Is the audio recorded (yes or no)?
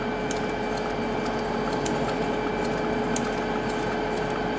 yes